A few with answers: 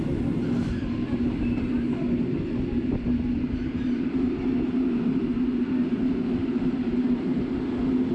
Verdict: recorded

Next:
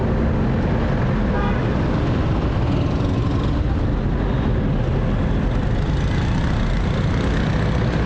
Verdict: recorded